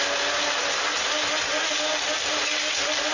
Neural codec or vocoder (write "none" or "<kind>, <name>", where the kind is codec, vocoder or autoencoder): none